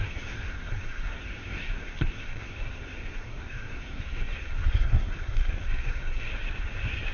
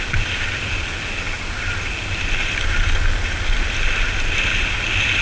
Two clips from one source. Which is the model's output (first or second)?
first